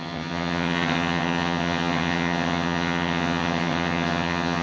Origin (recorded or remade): remade